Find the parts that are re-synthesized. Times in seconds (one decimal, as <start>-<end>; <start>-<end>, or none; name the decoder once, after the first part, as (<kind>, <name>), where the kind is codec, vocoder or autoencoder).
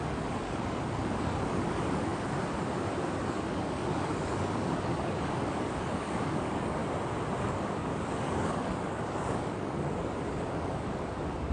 0.0-2.1 (codec, DAC); 3.3-6.8; 7.4-11.5